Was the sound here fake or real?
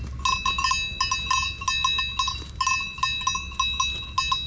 real